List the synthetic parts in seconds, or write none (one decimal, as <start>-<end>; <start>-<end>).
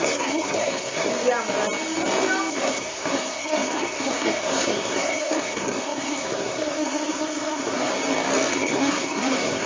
0.0-1.1; 2.5-7.9; 8.5-9.7